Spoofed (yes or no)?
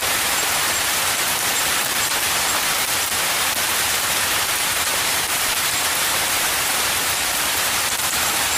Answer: yes